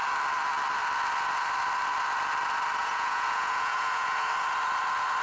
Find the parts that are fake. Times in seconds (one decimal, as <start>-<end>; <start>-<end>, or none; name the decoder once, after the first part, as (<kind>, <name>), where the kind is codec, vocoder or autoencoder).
2.8-4.3 (vocoder, Vocos)